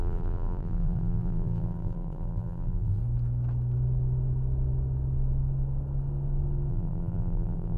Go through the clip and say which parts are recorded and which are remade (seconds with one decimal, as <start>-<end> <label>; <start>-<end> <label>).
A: 0.0-3.0 remade; 3.0-6.7 recorded; 6.7-7.8 remade